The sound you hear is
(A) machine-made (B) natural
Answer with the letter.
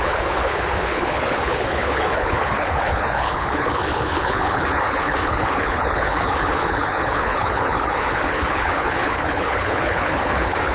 A